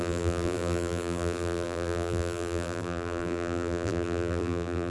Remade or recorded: remade